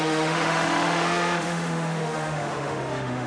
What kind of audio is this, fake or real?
fake